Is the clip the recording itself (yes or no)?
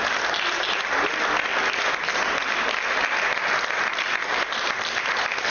yes